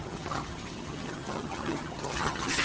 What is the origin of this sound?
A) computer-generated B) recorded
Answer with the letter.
A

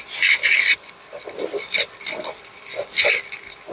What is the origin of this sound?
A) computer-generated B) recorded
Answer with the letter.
B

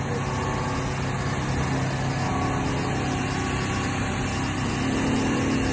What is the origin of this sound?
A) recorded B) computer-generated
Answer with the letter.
A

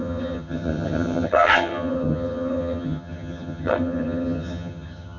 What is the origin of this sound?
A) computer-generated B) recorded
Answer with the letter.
A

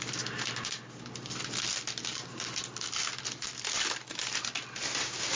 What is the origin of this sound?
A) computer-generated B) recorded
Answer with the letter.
B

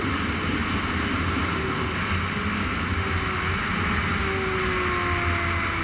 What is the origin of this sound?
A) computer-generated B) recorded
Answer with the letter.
B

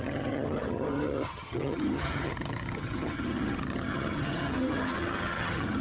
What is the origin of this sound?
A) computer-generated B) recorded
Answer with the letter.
A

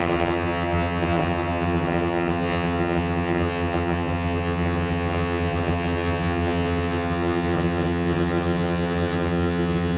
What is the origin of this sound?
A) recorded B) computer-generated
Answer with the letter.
B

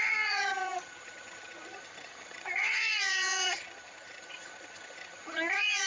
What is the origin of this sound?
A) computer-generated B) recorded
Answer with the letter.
A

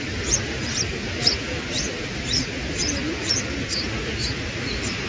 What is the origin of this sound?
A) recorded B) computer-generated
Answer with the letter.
A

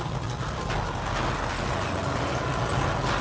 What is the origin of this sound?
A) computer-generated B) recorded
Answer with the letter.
B